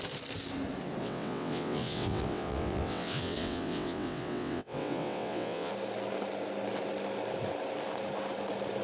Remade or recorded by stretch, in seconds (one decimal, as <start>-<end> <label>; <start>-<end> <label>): 0.0-1.0 recorded; 1.0-5.7 remade; 5.7-8.8 recorded